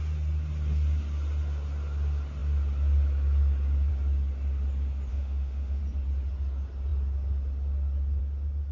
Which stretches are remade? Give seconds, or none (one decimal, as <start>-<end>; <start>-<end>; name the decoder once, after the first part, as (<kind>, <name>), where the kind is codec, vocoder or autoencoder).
5.1-5.8 (autoencoder, DAC-VAE)